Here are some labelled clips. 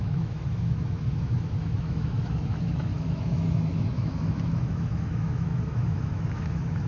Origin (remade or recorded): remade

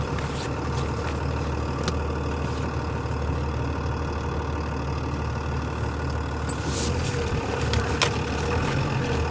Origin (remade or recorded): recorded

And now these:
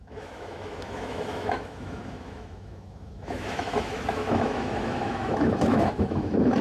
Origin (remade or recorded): remade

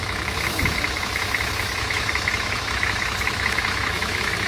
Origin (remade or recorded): remade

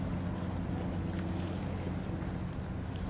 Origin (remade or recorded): recorded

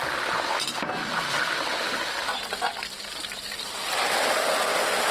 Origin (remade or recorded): recorded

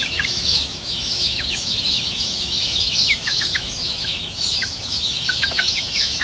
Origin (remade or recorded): remade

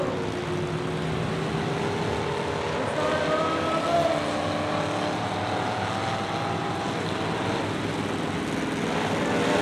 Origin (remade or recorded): recorded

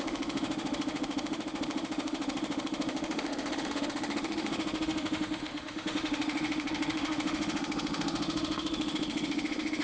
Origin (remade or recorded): remade